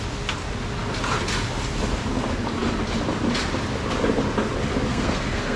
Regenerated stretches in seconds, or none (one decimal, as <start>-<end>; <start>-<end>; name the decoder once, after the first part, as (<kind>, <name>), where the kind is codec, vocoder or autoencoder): 4.9-5.6 (codec, SNAC)